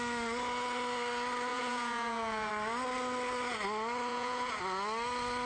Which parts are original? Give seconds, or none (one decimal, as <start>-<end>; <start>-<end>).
0.0-1.5; 2.5-4.1; 4.6-5.5